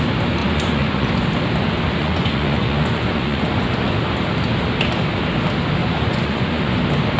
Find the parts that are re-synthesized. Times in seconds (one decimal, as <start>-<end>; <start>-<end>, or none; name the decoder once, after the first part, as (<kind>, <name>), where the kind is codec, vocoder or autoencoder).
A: 0.4-1.1 (vocoder, Vocos); 2.0-3.9; 5.8-6.8